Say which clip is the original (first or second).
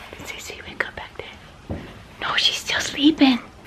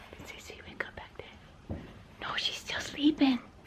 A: first